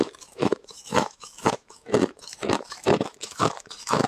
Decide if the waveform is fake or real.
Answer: fake